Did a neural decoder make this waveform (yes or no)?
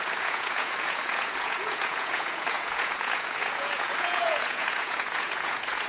yes